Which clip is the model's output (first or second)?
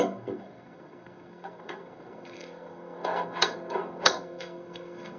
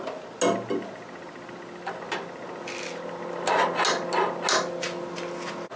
first